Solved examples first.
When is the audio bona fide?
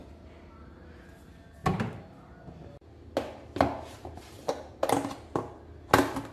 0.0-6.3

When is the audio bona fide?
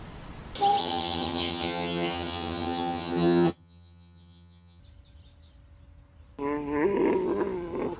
0.0-0.8; 4.8-8.0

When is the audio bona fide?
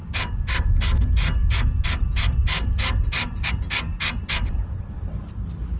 0.0-5.8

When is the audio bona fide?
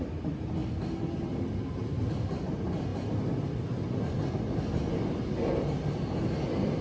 0.0-6.8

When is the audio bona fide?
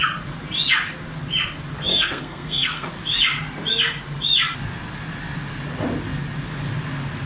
0.0-1.9; 2.9-7.3